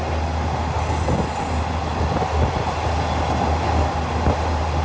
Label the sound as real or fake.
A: real